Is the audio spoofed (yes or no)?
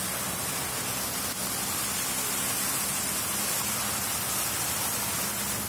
no